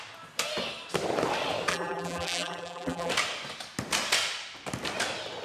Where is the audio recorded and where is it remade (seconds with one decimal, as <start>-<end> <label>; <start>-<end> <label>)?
0.0-1.7 recorded; 1.7-3.1 remade; 3.1-5.4 recorded